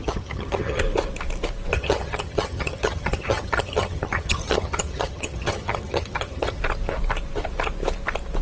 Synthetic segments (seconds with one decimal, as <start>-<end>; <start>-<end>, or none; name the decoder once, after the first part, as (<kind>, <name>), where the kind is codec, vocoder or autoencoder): 0.0-0.8 (vocoder, HiFi-GAN); 1.7-6.6